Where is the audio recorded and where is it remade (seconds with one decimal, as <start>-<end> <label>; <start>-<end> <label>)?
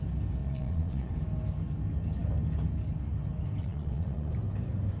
0.0-0.4 recorded; 0.4-1.1 remade; 1.1-3.6 recorded; 3.6-4.3 remade; 4.3-5.0 recorded